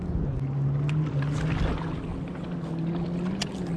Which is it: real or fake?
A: real